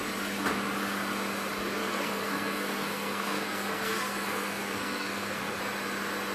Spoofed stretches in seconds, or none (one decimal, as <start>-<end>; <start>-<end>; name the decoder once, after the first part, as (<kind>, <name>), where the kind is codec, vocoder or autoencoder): 1.8-5.6 (codec, SNAC)

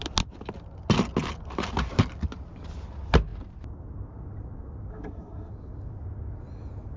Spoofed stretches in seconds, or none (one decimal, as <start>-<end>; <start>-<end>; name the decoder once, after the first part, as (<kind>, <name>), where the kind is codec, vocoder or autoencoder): 4.9-5.5 (codec, SNAC)

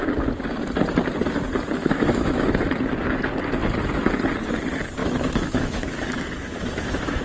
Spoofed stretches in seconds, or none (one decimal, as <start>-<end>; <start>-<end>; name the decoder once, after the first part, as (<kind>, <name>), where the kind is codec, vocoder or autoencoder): 1.8-2.7 (autoencoder, DAC-VAE); 5.0-7.2

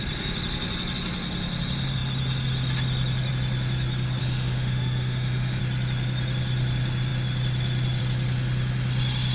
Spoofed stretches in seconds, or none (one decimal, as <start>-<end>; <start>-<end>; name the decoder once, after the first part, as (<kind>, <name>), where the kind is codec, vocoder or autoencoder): 4.2-5.6 (autoencoder, DAC-VAE)

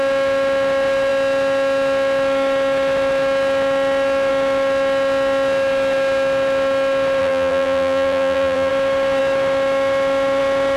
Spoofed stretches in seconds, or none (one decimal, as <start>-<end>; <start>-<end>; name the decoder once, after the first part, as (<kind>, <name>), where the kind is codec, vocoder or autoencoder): 7.2-8.7 (vocoder, BigVGAN v2)

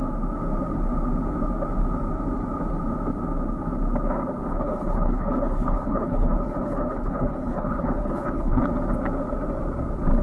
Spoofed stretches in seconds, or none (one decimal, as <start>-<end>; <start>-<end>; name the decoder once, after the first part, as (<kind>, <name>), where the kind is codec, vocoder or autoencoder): 4.5-8.6 (codec, HILCodec)